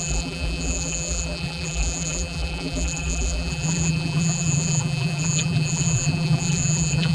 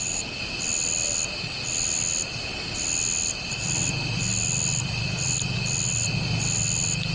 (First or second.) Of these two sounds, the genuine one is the second